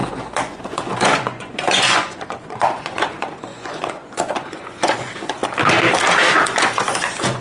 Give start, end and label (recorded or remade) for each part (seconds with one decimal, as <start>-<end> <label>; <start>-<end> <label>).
0.0-5.4 remade; 5.4-6.4 recorded; 6.4-7.4 remade